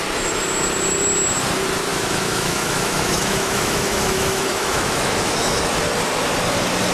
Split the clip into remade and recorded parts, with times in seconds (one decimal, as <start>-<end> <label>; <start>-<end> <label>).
0.0-1.9 recorded; 1.9-5.6 remade; 5.6-6.9 recorded